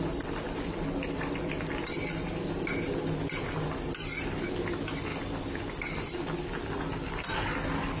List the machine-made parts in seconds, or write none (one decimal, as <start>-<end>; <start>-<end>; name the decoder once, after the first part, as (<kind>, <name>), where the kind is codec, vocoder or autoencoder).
none